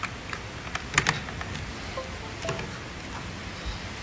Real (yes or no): yes